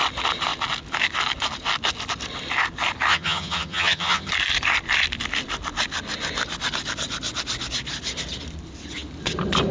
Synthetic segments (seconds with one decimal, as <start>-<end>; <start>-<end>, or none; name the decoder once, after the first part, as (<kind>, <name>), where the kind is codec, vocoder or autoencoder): 3.1-4.3 (vocoder, HiFi-GAN)

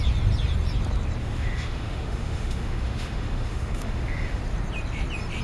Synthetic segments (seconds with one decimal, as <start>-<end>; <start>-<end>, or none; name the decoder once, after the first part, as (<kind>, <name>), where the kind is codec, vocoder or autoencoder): 1.2-4.4 (autoencoder, DAC-VAE)

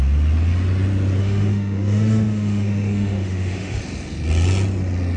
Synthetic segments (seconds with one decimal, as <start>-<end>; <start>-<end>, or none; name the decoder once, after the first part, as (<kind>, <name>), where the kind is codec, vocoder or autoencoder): 1.2-3.8 (autoencoder, DAC-VAE)

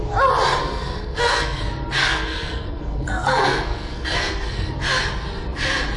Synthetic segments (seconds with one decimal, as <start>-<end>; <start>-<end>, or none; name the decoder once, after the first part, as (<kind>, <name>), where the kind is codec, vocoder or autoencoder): 0.6-1.6 (codec, SNAC); 2.0-4.7